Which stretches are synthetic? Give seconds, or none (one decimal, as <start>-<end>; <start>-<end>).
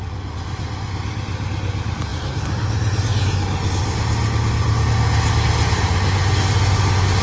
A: none